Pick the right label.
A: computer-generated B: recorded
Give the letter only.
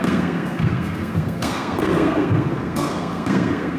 A